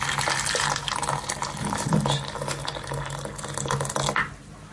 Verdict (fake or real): real